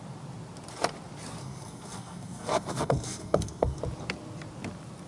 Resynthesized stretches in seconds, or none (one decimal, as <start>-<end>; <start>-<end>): 1.4-3.8